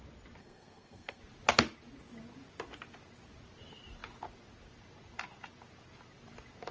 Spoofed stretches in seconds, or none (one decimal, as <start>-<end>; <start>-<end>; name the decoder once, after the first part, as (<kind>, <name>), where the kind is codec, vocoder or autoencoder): 0.4-1.2 (codec, SNAC)